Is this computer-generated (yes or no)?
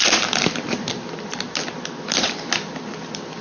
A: no